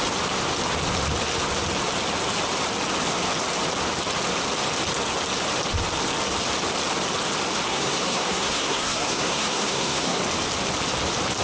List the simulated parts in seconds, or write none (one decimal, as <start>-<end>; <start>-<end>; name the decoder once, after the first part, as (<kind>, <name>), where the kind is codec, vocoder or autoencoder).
7.7-10.2 (codec, SNAC)